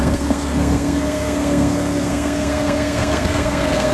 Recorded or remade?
remade